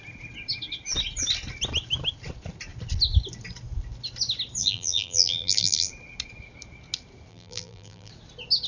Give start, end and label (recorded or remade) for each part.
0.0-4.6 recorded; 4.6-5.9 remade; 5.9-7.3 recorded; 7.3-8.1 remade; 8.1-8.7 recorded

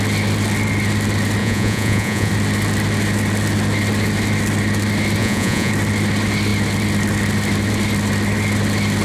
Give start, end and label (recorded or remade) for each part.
0.0-1.4 recorded; 1.4-2.3 remade; 2.3-5.2 recorded; 5.2-5.7 remade; 5.7-9.0 recorded